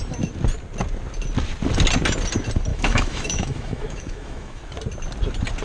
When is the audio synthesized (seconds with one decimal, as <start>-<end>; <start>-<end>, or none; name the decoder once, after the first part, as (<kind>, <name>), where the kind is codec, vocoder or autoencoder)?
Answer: 2.7-4.6 (autoencoder, DAC-VAE)